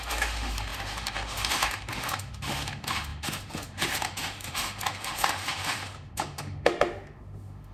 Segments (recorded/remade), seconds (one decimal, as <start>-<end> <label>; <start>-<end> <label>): 0.0-7.7 remade